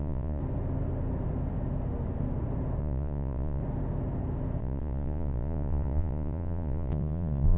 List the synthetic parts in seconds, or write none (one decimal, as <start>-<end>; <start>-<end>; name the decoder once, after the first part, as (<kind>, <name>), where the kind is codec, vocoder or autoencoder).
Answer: 0.0-0.4 (vocoder, Vocos); 2.8-3.6; 4.6-7.6